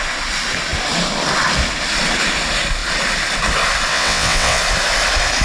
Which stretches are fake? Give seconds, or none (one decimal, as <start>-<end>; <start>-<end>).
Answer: 3.9-4.6